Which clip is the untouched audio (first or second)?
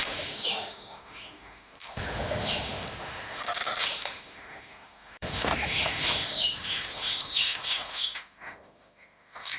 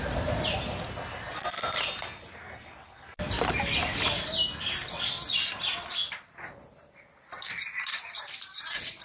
second